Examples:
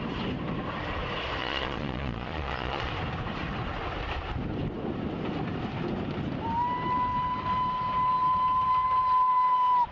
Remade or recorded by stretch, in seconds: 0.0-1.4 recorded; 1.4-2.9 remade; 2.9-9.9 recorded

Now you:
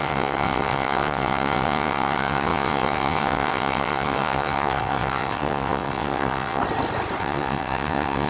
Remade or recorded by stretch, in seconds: 0.0-6.6 remade; 6.6-7.2 recorded; 7.2-8.3 remade

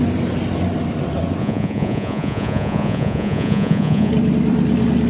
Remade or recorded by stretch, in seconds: 0.0-1.4 recorded; 1.4-4.1 remade; 4.1-5.1 recorded

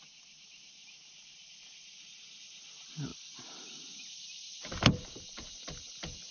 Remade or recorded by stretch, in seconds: 0.0-0.8 recorded; 0.8-1.5 remade; 1.5-3.1 recorded; 3.1-4.8 remade; 4.8-6.3 recorded

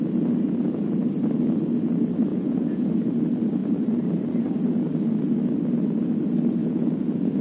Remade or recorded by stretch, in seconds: 0.0-2.3 recorded; 2.3-2.9 remade; 2.9-6.6 recorded; 6.6-7.4 remade

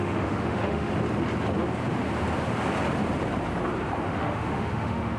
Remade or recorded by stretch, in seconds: 0.0-0.9 remade; 0.9-4.0 recorded; 4.0-5.2 remade

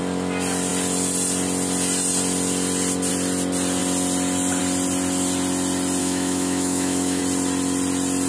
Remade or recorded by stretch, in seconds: 0.0-6.0 recorded; 6.0-7.2 remade; 7.2-8.3 recorded